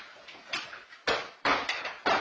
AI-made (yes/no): no